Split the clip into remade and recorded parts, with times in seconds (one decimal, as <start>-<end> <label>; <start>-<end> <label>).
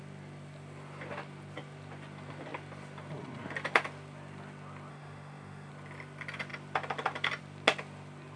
0.0-4.9 recorded; 4.9-5.7 remade; 5.7-8.4 recorded